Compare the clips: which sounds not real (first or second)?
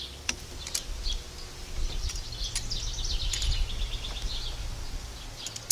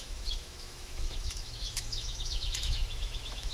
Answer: second